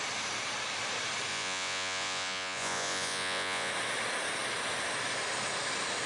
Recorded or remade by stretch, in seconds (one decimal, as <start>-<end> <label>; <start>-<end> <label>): 0.0-1.3 recorded; 1.3-3.7 remade; 3.7-6.1 recorded